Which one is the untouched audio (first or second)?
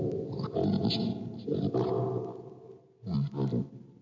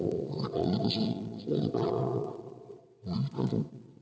first